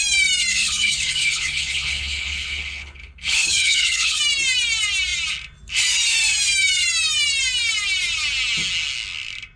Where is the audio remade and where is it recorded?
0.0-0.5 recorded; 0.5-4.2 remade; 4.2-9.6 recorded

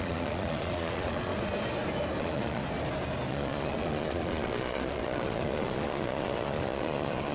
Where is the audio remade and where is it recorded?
0.0-1.3 remade; 1.3-2.2 recorded; 2.2-2.6 remade; 2.6-3.3 recorded; 3.3-7.3 remade

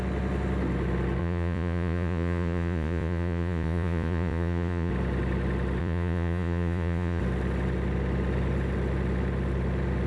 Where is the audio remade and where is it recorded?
0.0-1.2 recorded; 1.2-4.9 remade; 4.9-5.8 recorded; 5.8-7.2 remade; 7.2-10.1 recorded

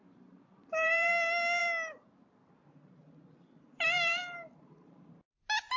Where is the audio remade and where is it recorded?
0.0-1.1 remade; 1.1-1.6 recorded; 1.6-5.1 remade; 5.1-5.8 recorded

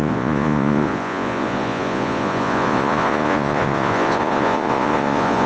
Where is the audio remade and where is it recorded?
0.0-5.5 remade

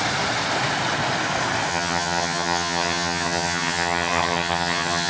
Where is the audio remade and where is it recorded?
0.0-1.7 recorded; 1.7-5.1 remade